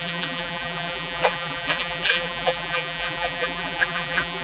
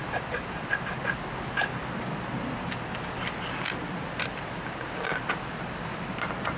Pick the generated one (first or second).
first